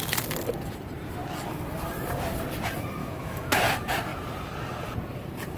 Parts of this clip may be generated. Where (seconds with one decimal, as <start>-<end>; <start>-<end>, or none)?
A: 3.0-3.6